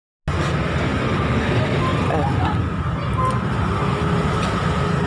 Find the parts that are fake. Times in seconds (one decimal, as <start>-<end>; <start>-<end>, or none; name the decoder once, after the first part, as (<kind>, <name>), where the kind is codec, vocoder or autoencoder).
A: none